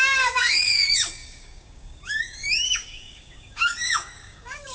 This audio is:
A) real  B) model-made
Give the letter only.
B